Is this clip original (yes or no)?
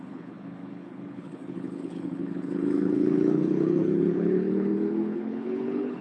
no